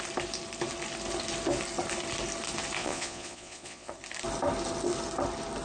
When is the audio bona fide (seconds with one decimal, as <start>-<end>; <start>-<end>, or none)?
0.0-2.8; 3.9-5.6

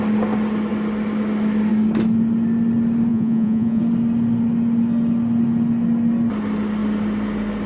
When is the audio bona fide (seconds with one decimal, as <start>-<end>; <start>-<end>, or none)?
0.0-3.1; 3.8-7.7

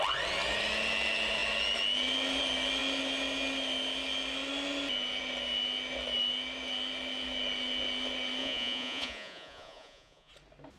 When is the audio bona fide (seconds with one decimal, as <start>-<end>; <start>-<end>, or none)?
0.0-8.4; 10.3-10.8

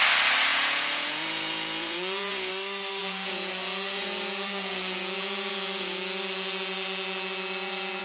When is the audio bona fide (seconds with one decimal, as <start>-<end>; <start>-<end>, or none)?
0.0-0.5; 2.5-3.0

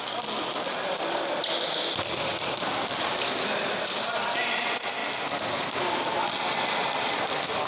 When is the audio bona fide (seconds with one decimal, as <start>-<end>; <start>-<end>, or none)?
0.0-7.7